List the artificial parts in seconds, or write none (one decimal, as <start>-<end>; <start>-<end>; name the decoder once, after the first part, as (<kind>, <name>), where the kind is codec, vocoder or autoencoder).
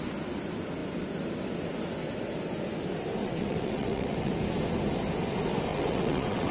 3.2-4.3 (vocoder, WaveNeXt); 5.7-6.5